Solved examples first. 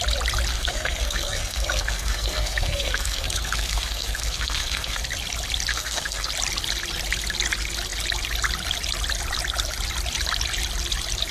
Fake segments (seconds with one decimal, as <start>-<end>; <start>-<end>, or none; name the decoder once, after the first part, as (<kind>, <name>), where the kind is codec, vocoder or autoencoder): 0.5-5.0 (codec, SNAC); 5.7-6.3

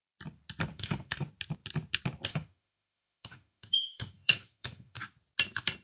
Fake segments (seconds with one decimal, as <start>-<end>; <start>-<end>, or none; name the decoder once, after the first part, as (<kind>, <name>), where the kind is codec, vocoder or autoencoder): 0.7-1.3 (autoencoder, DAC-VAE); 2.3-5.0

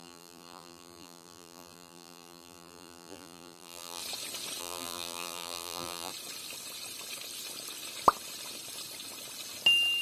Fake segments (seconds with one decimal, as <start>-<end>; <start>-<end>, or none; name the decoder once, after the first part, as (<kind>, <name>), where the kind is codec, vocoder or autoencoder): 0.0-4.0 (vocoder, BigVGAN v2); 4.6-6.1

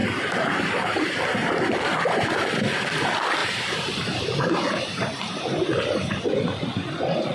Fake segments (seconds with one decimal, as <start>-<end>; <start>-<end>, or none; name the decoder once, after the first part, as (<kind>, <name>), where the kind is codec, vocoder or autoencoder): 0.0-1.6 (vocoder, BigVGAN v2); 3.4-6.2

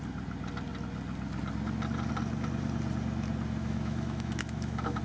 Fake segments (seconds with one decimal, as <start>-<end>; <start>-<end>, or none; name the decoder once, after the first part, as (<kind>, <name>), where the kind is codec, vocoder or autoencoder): 3.6-5.0 (autoencoder, DAC-VAE)

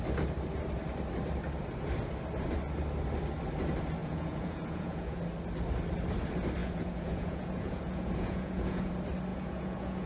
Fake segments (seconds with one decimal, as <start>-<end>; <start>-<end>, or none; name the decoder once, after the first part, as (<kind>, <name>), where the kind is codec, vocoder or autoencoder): 4.0-5.2 (vocoder, Vocos); 6.6-8.9; 9.3-10.1

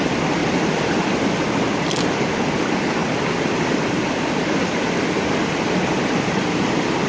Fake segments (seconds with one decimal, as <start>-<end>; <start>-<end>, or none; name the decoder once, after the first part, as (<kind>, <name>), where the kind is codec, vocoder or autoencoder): 0.4-1.4 (vocoder, BigVGAN v2); 3.0-4.0